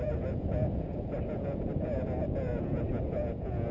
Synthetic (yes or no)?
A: yes